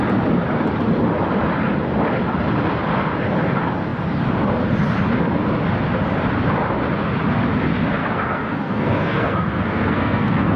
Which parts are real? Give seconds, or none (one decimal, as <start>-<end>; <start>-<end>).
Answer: 0.0-8.0